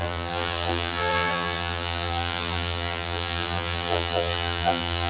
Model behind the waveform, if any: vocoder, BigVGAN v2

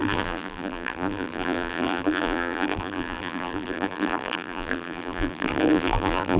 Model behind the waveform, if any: vocoder, BigVGAN v2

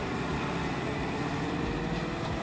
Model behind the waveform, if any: none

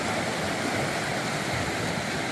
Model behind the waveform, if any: none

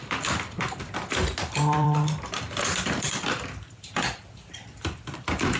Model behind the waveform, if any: vocoder, BigVGAN v2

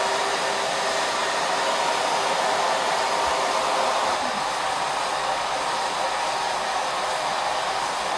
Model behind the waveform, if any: none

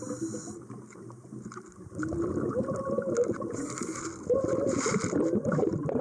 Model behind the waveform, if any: none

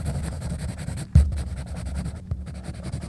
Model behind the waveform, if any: vocoder, BigVGAN v2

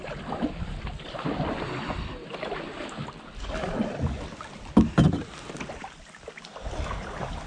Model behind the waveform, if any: none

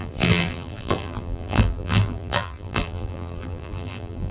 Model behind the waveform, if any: vocoder, BigVGAN v2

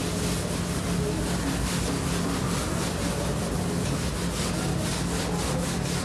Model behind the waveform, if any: none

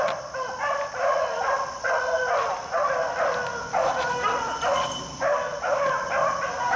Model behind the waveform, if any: none